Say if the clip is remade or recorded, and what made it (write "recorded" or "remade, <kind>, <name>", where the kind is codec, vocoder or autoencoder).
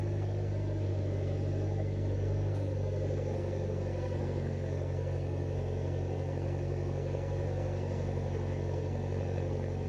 remade, codec, SNAC